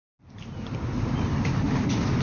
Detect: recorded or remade recorded